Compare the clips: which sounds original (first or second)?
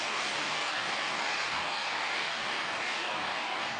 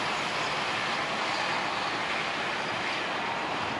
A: second